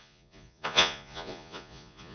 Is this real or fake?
fake